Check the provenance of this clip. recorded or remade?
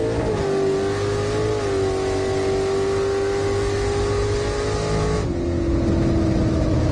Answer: recorded